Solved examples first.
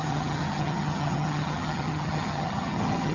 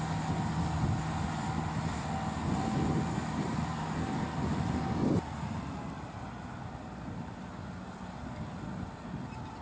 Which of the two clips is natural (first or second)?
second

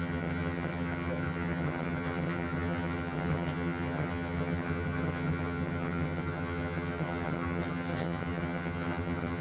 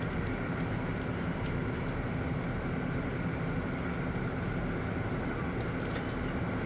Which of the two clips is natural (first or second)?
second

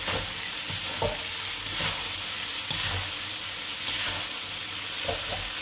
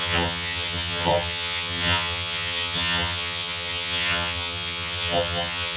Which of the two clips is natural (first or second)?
first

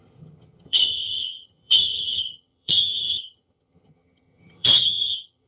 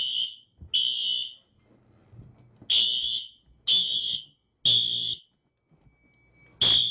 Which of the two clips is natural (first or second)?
second